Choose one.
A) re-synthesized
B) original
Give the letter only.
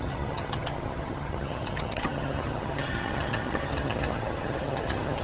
A